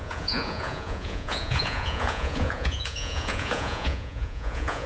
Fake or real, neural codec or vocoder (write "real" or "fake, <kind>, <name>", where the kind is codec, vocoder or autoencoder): fake, vocoder, Vocos